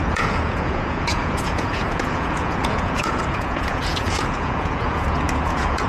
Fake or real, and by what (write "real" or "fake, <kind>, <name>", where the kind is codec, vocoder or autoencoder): fake, vocoder, Vocos